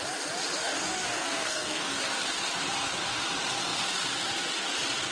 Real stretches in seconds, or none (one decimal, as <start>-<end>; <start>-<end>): 0.0-0.6; 2.0-5.1